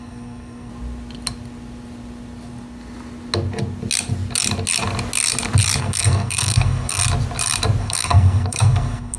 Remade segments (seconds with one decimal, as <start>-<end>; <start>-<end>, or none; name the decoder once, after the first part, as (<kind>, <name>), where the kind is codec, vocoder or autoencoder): 0.0-0.7 (codec, SNAC); 5.8-7.0; 7.8-9.2